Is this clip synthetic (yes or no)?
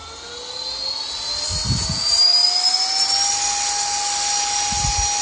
no